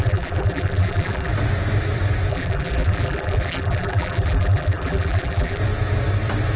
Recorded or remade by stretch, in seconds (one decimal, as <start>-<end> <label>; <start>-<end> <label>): 0.0-1.3 remade; 1.3-2.3 recorded; 2.3-5.6 remade; 5.6-6.6 recorded